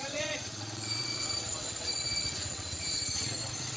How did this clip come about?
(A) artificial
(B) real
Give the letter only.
A